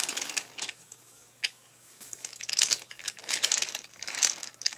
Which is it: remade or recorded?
remade